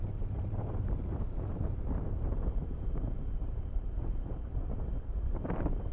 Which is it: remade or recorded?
remade